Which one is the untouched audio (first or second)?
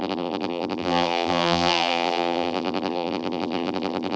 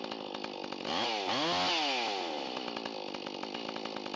second